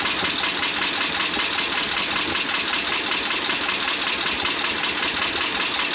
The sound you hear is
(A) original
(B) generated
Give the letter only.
A